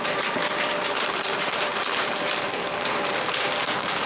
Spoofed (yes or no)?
yes